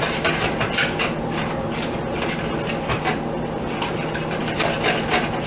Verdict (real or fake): real